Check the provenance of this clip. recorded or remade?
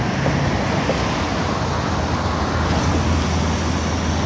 recorded